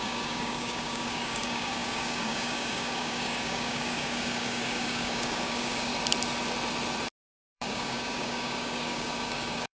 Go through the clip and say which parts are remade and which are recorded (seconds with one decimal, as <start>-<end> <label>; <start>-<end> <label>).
0.0-5.9 remade; 5.9-7.5 recorded; 7.5-9.8 remade